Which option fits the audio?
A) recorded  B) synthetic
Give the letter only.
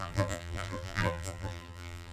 B